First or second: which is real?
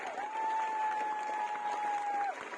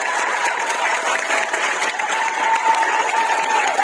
first